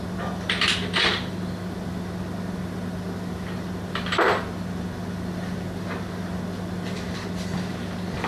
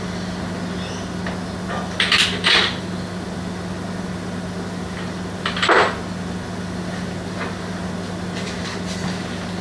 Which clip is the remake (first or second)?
first